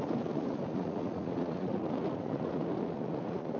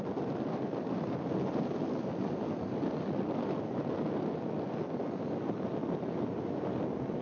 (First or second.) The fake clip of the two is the first